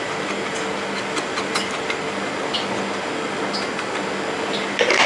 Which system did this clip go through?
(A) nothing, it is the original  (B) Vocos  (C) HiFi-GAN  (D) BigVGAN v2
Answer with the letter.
A